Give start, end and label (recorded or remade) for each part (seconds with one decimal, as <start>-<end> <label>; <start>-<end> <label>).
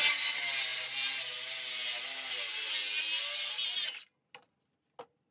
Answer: 0.0-5.3 recorded